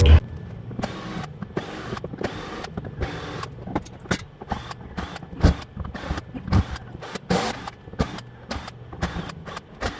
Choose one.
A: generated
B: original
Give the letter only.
B